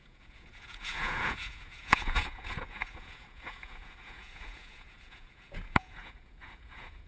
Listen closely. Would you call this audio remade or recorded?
remade